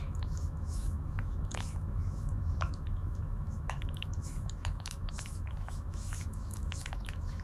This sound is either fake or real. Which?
fake